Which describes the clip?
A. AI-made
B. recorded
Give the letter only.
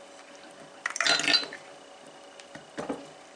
B